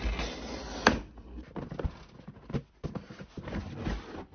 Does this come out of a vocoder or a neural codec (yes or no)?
no